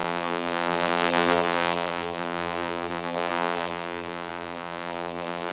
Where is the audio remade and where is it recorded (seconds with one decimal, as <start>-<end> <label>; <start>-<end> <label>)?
0.0-5.5 remade